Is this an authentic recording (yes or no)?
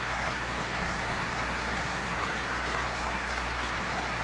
no